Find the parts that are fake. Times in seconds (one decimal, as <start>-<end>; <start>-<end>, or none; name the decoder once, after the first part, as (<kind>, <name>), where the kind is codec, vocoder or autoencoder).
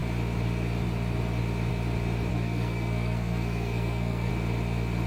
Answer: 2.3-4.3 (codec, SNAC)